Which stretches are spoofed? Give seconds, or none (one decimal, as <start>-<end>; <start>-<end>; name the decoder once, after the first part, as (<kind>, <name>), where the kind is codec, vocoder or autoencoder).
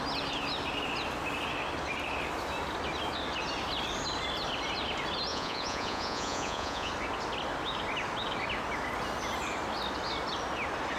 5.3-6.9 (vocoder, Vocos)